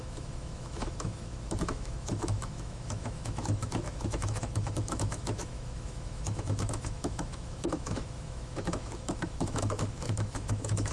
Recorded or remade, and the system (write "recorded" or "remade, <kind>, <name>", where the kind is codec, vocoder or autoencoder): remade, autoencoder, DAC-VAE